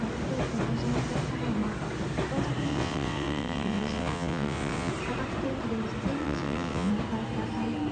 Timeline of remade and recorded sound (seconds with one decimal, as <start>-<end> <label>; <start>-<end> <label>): 0.0-2.7 recorded; 2.7-4.9 remade; 4.9-6.2 recorded; 6.2-6.9 remade; 6.9-7.9 recorded